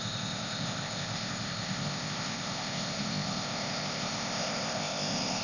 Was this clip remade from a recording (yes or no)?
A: yes